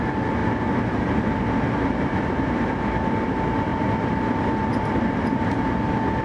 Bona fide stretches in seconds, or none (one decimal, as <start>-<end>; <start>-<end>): 0.0-3.7; 5.4-6.2